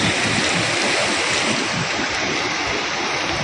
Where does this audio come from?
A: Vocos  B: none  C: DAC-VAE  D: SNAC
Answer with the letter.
B